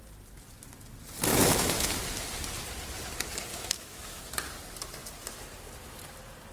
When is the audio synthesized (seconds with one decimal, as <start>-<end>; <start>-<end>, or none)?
1.3-2.0; 3.5-4.2